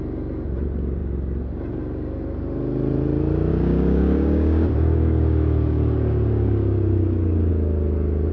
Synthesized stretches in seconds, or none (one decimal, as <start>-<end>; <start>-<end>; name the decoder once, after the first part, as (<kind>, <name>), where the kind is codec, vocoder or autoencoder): 3.5-7.5 (codec, DAC)